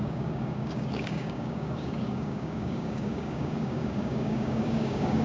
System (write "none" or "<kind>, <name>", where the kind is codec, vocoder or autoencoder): codec, DAC